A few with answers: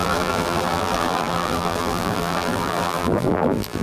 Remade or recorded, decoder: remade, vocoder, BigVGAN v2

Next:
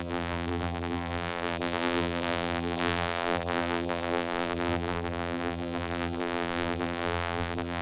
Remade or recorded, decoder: remade, vocoder, BigVGAN v2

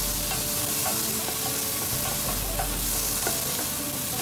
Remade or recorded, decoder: recorded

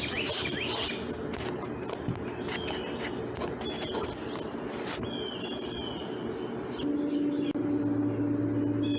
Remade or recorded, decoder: recorded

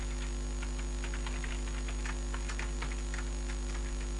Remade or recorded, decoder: recorded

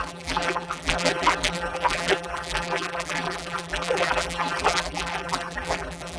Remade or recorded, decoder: remade, vocoder, BigVGAN v2